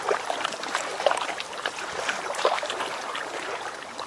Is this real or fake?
fake